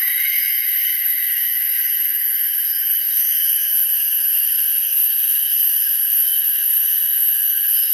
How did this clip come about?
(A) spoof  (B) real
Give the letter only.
A